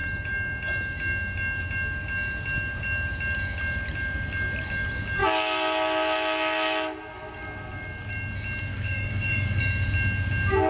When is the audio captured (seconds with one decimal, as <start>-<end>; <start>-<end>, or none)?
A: 0.0-8.7; 9.6-10.7